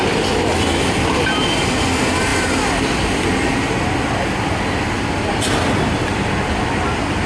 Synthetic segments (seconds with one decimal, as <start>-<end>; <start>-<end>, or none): 0.0-2.3; 6.6-7.3